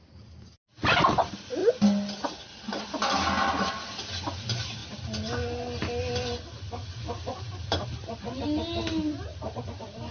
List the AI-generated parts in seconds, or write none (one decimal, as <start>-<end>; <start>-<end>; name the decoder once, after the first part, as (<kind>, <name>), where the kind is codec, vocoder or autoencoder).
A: none